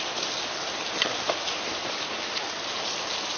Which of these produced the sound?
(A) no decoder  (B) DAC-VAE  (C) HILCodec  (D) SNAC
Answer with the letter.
A